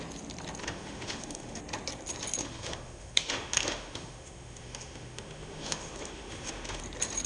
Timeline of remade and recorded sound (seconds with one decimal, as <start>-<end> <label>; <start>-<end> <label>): 0.0-0.6 recorded; 0.6-1.6 remade; 1.6-2.4 recorded; 2.4-6.8 remade; 6.8-7.3 recorded